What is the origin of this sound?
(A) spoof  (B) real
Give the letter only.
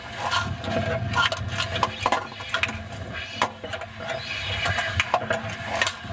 B